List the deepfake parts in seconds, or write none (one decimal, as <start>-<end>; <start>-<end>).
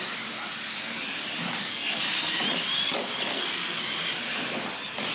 1.6-2.3; 3.3-3.8